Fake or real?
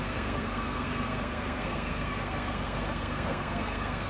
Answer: fake